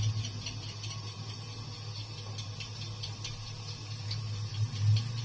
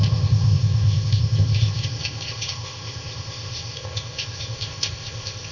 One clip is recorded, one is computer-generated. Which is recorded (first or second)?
first